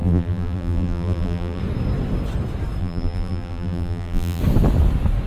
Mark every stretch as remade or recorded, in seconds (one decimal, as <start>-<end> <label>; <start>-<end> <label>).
0.0-1.6 remade; 1.6-2.8 recorded; 2.8-4.4 remade; 4.4-5.3 recorded